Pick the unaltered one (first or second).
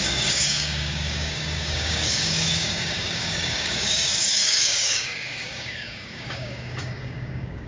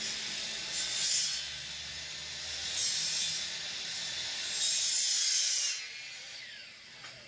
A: second